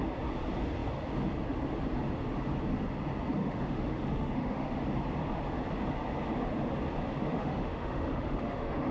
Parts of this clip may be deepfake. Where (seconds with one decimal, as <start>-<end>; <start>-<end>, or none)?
3.4-4.8; 7.3-8.9